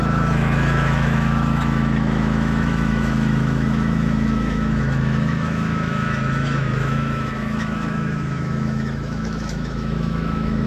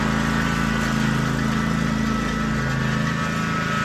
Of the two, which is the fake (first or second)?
first